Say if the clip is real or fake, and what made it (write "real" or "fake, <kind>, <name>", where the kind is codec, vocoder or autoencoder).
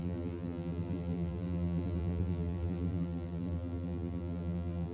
fake, vocoder, BigVGAN v2